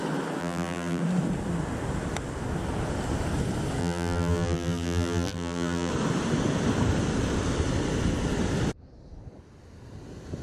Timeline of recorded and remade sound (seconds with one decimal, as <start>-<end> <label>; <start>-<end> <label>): 0.0-0.4 recorded; 0.4-1.0 remade; 1.0-3.8 recorded; 3.8-5.9 remade; 5.9-10.4 recorded